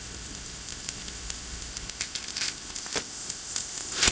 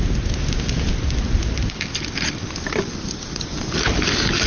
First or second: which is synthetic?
first